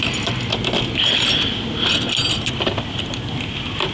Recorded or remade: recorded